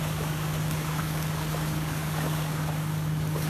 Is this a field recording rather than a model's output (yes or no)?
no